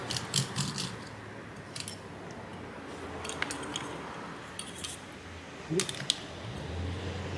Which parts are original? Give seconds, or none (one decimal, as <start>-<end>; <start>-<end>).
0.0-7.4